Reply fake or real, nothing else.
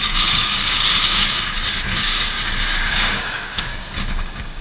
fake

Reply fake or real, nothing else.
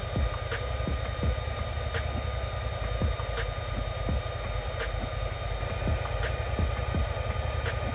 real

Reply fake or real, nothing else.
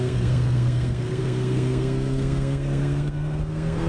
fake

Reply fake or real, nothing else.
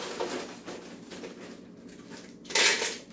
real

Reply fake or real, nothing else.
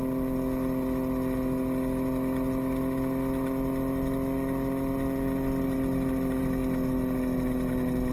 real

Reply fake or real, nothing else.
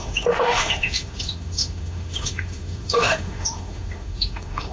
fake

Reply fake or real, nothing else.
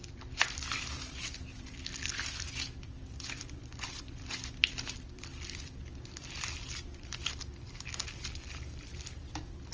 fake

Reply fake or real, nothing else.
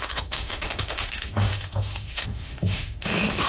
fake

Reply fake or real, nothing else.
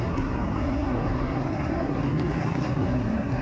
fake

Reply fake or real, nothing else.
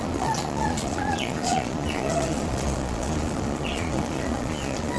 fake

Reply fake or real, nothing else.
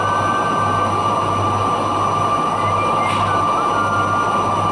real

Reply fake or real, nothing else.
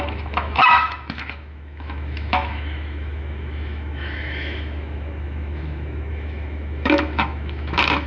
fake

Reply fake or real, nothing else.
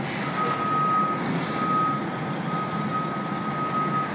real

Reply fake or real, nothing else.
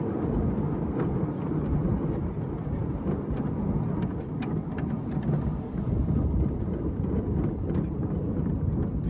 real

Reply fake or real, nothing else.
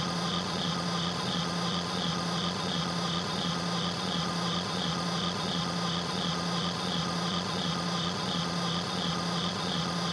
fake